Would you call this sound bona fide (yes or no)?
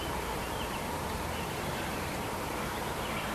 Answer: no